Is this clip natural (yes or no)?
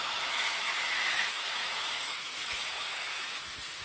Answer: no